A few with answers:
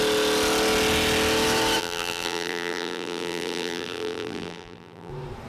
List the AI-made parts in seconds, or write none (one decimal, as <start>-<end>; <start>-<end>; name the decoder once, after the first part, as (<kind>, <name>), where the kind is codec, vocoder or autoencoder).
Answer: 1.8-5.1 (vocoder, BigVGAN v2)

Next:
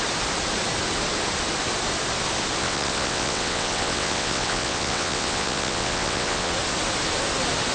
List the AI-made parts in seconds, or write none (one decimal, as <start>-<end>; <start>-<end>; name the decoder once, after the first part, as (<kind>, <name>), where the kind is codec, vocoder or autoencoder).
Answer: 2.6-6.5 (vocoder, WaveNeXt)

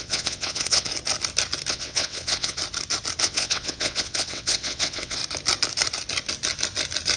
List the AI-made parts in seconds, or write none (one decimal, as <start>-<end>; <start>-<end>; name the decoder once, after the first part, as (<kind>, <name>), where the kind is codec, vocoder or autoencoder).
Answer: 0.0-0.9 (vocoder, WaveNeXt); 1.7-2.6; 3.2-5.2